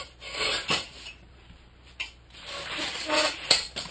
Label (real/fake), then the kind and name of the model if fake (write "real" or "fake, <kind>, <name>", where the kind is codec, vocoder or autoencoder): fake, vocoder, BigVGAN v2